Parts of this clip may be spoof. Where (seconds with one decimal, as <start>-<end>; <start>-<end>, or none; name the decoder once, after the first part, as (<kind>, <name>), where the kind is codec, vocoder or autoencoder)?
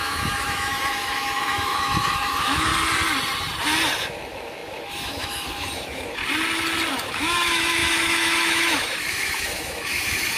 0.0-2.7 (autoencoder, DAC-VAE); 4.0-6.2; 6.9-10.4